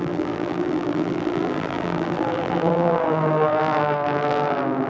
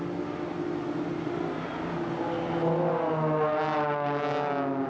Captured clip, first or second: second